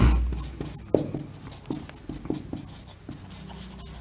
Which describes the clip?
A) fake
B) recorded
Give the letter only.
B